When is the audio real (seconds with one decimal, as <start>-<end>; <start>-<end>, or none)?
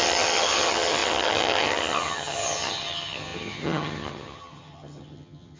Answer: none